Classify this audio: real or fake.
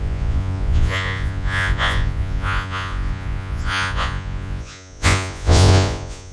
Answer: fake